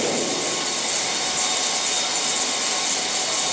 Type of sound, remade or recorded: recorded